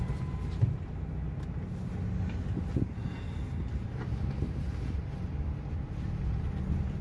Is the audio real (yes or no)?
yes